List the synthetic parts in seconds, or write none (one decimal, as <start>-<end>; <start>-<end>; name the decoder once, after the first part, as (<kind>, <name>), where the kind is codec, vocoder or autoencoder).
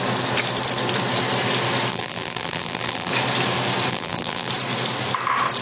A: 1.9-3.1 (vocoder, BigVGAN v2); 3.9-4.5